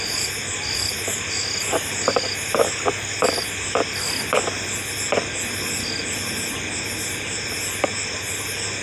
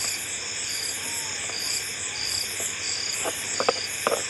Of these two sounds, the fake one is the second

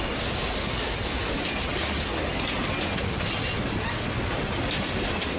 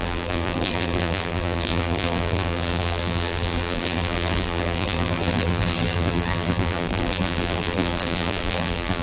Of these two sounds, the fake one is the second